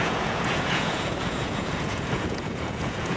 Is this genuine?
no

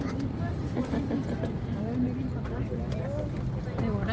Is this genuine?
yes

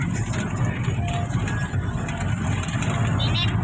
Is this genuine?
yes